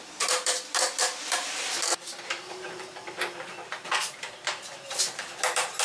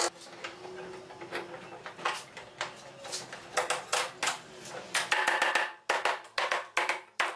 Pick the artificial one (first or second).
first